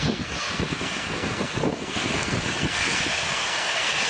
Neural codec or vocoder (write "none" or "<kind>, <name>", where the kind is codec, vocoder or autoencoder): codec, SNAC